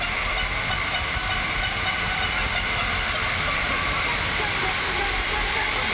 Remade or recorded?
remade